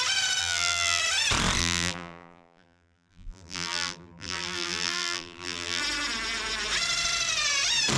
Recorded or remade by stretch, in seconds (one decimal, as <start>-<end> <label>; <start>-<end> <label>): 0.0-0.4 recorded; 0.4-1.0 remade; 1.0-1.6 recorded; 1.6-5.8 remade; 5.8-8.0 recorded